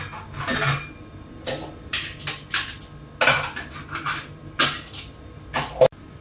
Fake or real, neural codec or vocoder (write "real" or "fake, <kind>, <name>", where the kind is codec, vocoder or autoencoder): real